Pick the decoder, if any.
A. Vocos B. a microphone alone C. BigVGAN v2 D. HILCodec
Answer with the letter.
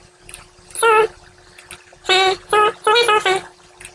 B